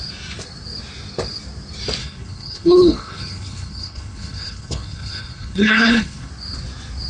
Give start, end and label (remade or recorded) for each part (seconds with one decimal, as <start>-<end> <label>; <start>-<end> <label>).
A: 0.0-2.0 recorded; 2.0-6.3 remade; 6.3-7.1 recorded